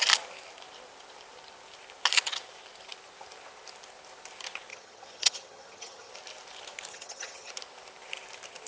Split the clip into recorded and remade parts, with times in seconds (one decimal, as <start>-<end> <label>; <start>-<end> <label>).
0.0-4.7 recorded; 4.7-6.1 remade; 6.1-6.9 recorded; 6.9-7.5 remade; 7.5-8.7 recorded